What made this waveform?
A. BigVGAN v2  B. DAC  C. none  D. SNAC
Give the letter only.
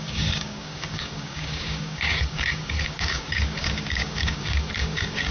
B